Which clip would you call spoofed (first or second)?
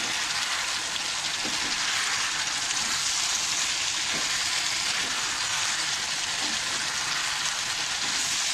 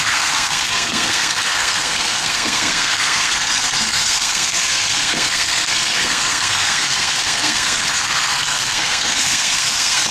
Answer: second